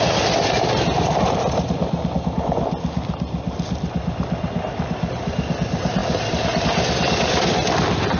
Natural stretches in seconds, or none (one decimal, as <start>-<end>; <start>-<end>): 0.0-8.2